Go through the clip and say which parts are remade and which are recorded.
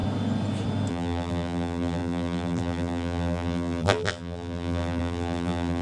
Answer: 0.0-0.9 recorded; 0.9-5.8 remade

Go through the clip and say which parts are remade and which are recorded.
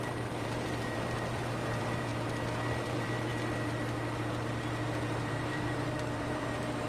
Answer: 0.0-2.1 remade; 2.1-2.7 recorded; 2.7-3.3 remade; 3.3-5.2 recorded; 5.2-6.9 remade